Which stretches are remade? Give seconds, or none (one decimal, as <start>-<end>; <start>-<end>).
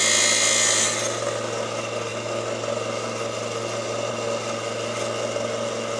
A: none